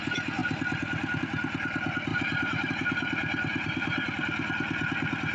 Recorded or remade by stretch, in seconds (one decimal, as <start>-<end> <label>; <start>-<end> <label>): 0.0-2.1 recorded; 2.1-2.7 remade; 2.7-3.5 recorded; 3.5-4.2 remade; 4.2-5.3 recorded